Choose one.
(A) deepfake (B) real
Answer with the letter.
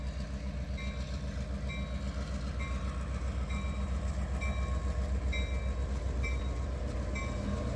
B